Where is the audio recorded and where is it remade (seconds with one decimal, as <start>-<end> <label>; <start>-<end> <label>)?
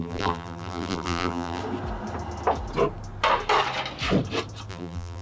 0.0-1.6 remade; 1.6-4.7 recorded; 4.7-5.2 remade